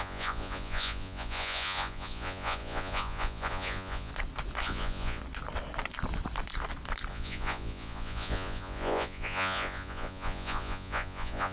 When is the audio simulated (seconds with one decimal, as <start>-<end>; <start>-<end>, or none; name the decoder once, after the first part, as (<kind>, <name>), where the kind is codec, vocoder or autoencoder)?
0.0-4.1 (vocoder, Vocos); 4.6-5.2; 7.1-11.5

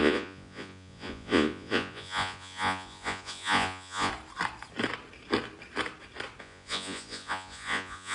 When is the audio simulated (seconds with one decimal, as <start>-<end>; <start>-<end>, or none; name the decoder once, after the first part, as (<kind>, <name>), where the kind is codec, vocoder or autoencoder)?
0.0-4.1 (vocoder, Vocos); 6.4-8.1

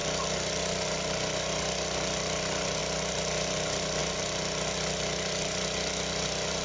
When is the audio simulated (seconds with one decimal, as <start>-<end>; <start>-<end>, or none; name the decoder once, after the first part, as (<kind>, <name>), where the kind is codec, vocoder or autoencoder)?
none